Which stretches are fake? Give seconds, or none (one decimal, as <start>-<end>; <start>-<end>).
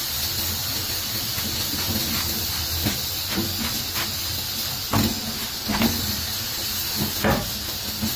0.6-1.4; 2.0-4.8